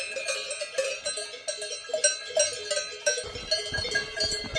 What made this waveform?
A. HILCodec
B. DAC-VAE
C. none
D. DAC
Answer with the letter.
C